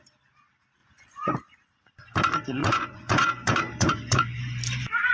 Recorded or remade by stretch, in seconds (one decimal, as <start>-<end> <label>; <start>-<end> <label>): 0.0-0.8 recorded; 0.8-1.3 remade; 1.3-2.6 recorded; 2.6-4.4 remade; 4.4-5.1 recorded